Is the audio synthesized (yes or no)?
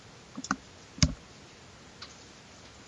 no